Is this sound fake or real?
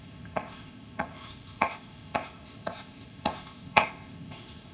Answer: fake